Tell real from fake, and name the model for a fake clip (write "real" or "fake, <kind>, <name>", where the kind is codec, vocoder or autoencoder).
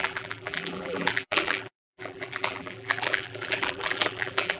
fake, vocoder, BigVGAN v2